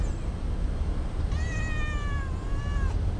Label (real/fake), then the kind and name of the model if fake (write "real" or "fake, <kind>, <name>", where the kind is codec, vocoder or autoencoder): real